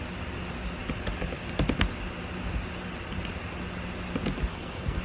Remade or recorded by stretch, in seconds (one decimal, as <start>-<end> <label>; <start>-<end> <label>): 0.0-4.5 recorded; 4.5-5.0 remade